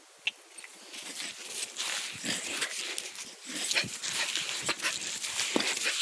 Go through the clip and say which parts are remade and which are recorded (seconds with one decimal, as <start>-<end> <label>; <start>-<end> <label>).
0.0-6.0 recorded